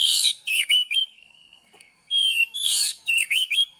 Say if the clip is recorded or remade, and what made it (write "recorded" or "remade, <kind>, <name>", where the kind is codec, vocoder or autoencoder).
remade, codec, SNAC